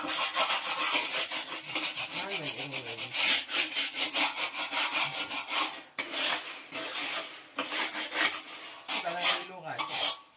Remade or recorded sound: recorded